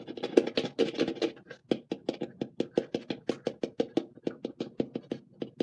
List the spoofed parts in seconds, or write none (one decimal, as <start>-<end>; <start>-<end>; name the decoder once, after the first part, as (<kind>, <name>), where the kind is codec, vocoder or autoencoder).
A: none